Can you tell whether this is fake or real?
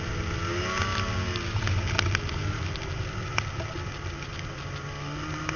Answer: real